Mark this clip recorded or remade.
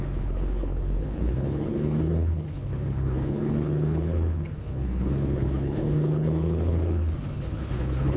remade